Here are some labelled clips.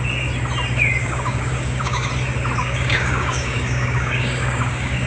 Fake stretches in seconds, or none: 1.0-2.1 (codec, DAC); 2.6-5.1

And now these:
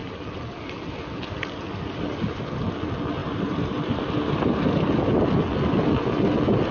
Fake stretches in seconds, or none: 3.2-4.6 (vocoder, BigVGAN v2)

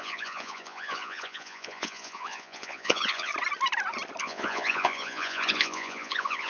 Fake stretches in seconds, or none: 0.0-3.3 (vocoder, Vocos); 4.2-6.5

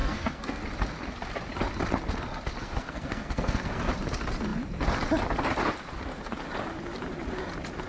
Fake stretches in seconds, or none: 0.0-0.6 (codec, SNAC); 2.6-3.8

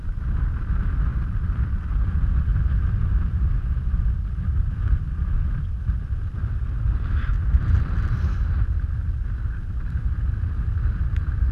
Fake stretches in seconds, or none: 1.1-1.9 (vocoder, BigVGAN v2); 2.5-5.3

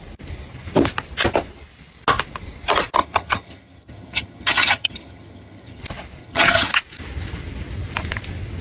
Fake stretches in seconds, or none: 3.0-5.8 (vocoder, HiFi-GAN); 6.2-6.7

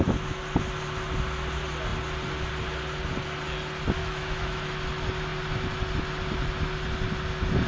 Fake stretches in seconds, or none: 4.0-4.7 (autoencoder, DAC-VAE)

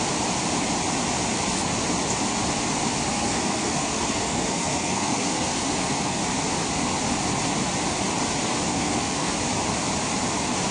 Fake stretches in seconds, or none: 3.1-6.2 (codec, SNAC); 8.7-9.4